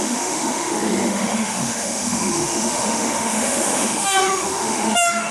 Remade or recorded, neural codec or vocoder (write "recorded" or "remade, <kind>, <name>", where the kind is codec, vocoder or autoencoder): remade, autoencoder, DAC-VAE